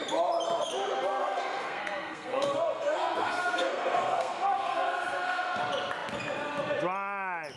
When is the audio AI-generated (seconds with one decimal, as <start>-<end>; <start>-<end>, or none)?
1.2-5.6

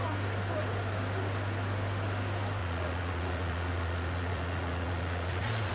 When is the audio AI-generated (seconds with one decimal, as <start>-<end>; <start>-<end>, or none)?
2.6-5.7

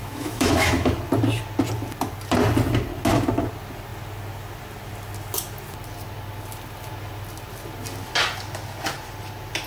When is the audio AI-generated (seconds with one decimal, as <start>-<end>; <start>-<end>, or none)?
0.0-0.9

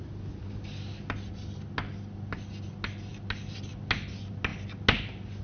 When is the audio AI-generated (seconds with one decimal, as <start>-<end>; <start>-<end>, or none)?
none

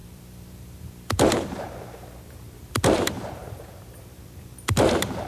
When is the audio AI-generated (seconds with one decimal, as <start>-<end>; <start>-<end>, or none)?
0.0-5.3